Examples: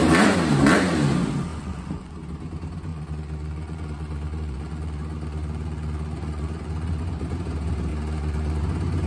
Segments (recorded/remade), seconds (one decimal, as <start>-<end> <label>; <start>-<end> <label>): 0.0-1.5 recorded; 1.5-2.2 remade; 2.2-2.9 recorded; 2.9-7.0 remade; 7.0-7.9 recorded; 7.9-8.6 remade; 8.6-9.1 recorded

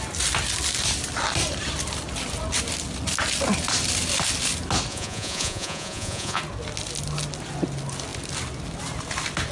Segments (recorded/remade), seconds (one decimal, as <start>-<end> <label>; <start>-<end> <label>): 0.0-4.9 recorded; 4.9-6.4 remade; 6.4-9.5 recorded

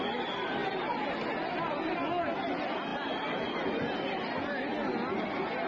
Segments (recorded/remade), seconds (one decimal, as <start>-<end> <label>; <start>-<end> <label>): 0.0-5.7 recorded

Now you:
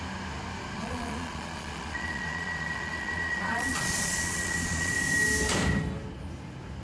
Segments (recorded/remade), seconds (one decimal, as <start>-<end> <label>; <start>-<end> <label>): 0.0-0.8 recorded; 0.8-4.9 remade; 4.9-6.8 recorded

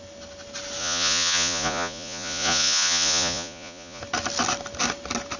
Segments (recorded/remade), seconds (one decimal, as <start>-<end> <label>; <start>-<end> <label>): 0.0-0.8 recorded; 0.8-4.0 remade; 4.0-5.4 recorded